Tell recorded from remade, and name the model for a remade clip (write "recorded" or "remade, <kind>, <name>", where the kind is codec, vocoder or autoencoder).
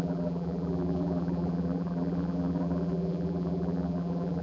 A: remade, vocoder, BigVGAN v2